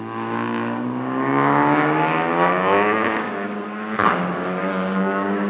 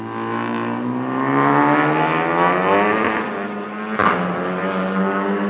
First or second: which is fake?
first